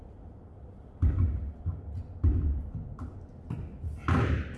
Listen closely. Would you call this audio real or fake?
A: real